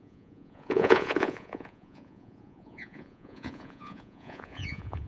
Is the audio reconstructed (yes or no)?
yes